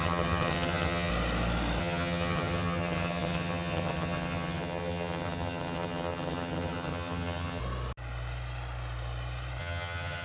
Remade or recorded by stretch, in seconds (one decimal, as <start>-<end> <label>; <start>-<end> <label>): 0.0-1.1 remade; 1.1-1.8 recorded; 1.8-7.6 remade; 7.6-9.6 recorded; 9.6-10.2 remade